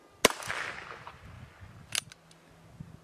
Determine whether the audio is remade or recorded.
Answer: recorded